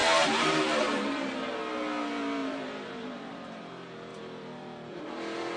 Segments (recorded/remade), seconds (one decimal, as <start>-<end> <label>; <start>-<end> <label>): 0.0-1.3 remade; 1.3-2.4 recorded; 2.4-3.6 remade; 3.6-5.6 recorded